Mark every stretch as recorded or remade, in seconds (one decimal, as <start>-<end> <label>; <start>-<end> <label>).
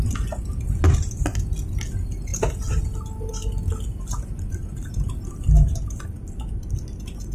0.0-7.3 recorded